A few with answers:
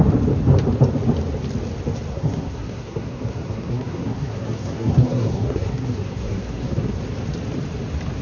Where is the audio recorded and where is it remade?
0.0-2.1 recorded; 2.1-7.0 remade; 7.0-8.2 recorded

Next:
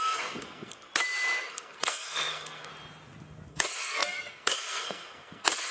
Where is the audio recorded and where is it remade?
0.0-0.9 remade; 0.9-1.4 recorded; 1.4-2.7 remade; 2.7-3.5 recorded; 3.5-5.7 remade

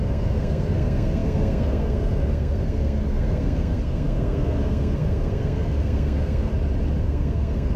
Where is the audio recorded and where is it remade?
0.0-6.5 remade; 6.5-7.0 recorded; 7.0-7.8 remade

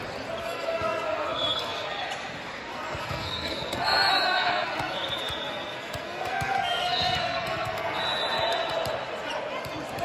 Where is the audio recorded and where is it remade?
0.0-0.4 recorded; 0.4-2.0 remade; 2.0-2.7 recorded; 2.7-8.0 remade; 8.0-10.0 recorded

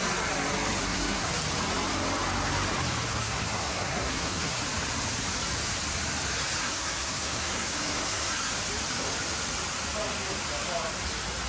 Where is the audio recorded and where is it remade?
0.0-0.8 recorded; 0.8-1.3 remade; 1.3-3.1 recorded; 3.1-4.6 remade; 4.6-6.6 recorded; 6.6-8.5 remade; 8.5-11.5 recorded

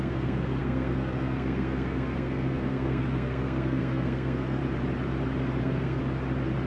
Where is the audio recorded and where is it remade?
0.0-4.6 remade; 4.6-5.6 recorded; 5.6-6.0 remade; 6.0-6.7 recorded

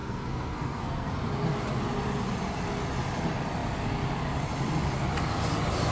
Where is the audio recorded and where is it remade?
0.0-1.1 remade; 1.1-5.9 recorded